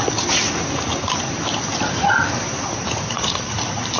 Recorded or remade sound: recorded